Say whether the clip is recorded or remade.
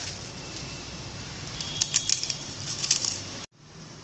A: remade